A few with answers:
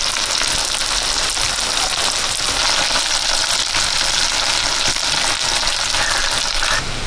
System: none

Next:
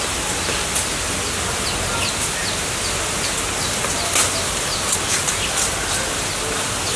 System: none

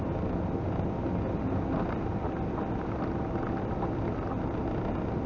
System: none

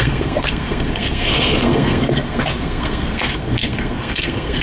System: codec, SNAC